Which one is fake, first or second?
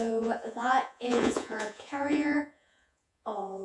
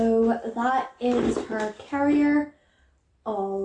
first